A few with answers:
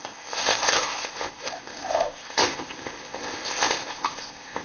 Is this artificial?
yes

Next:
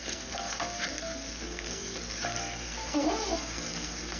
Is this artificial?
yes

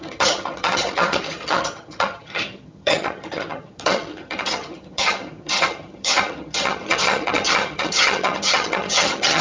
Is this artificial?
yes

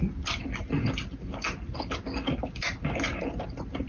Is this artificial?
no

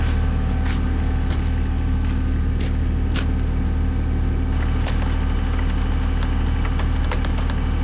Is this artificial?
no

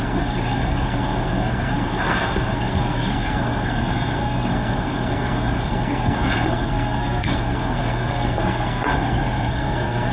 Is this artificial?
yes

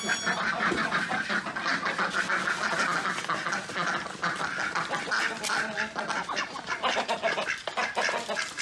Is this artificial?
no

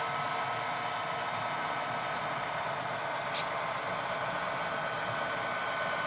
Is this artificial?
no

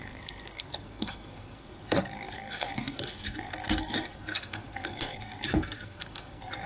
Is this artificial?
yes